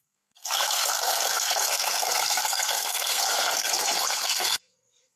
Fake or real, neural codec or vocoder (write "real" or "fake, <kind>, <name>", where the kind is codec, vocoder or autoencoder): fake, codec, SNAC